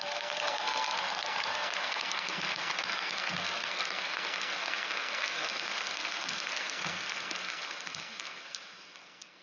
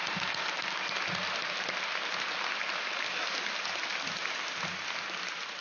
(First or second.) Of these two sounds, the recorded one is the second